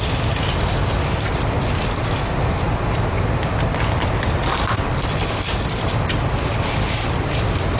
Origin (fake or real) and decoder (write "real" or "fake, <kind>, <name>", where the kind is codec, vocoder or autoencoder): real